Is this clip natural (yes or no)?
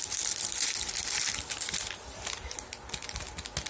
yes